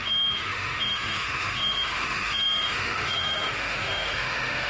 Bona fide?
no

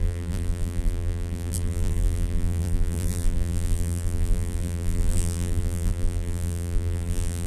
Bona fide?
no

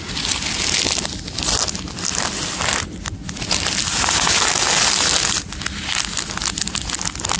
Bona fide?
yes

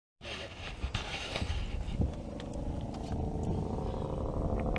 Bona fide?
yes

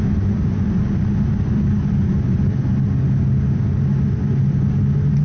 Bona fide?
yes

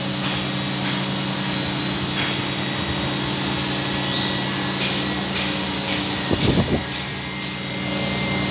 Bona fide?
yes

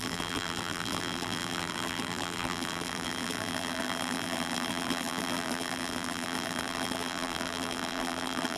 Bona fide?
no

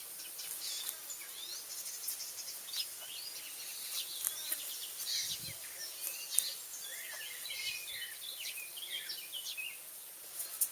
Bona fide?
yes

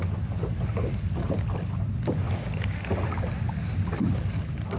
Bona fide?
yes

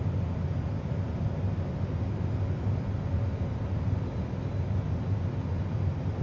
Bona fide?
yes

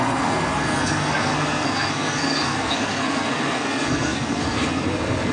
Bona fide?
no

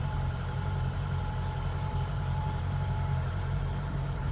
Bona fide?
no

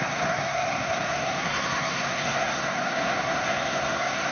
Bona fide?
no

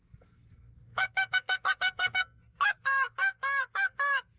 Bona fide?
no